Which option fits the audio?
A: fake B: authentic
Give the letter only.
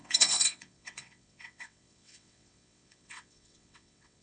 A